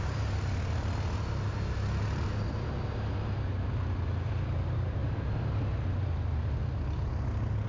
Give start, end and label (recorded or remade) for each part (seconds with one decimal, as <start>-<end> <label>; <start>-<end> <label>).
0.0-7.7 recorded